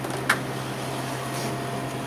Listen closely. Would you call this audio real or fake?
real